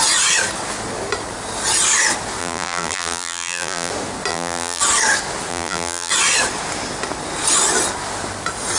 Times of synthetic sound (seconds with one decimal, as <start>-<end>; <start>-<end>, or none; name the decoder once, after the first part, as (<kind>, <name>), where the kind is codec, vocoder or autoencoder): 2.4-3.9 (vocoder, BigVGAN v2); 4.3-4.8; 5.5-6.1